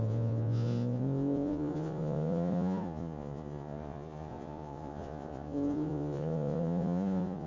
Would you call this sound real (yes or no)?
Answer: no